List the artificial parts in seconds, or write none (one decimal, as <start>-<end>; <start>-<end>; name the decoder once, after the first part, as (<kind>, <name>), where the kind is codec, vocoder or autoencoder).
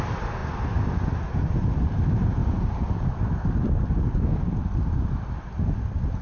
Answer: none